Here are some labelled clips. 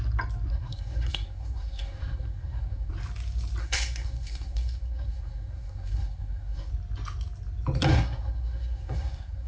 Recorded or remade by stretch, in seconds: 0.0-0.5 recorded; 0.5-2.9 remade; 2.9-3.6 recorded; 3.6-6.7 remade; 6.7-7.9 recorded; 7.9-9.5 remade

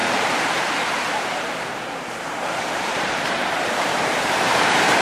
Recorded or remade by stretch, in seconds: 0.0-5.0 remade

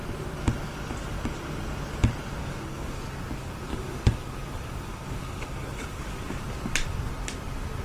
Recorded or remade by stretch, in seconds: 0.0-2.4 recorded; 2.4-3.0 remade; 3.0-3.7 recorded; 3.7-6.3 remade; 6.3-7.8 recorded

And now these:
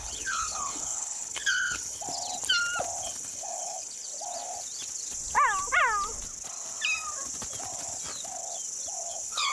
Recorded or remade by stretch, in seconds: 0.0-2.0 remade; 2.0-3.0 recorded; 3.0-4.1 remade; 4.1-9.1 recorded; 9.1-9.5 remade

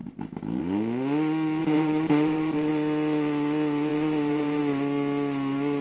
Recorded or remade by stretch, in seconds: 0.0-1.6 recorded; 1.6-2.7 remade; 2.7-3.9 recorded; 3.9-4.6 remade; 4.6-5.8 recorded

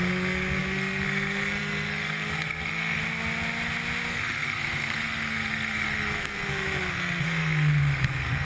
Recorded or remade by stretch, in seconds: 0.0-3.0 remade; 3.0-4.1 recorded; 4.1-8.4 remade